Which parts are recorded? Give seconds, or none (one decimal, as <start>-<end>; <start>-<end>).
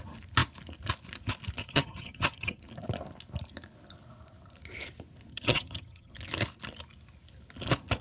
0.0-1.6; 2.6-5.3; 6.1-8.0